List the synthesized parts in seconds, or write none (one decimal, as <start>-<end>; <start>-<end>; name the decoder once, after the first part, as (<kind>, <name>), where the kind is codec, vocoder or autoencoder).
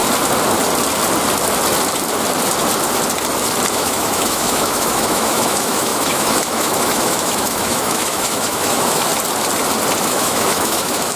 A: 3.7-9.1 (autoencoder, DAC-VAE); 10.0-11.2